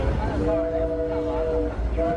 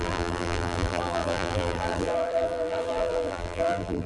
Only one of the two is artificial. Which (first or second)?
second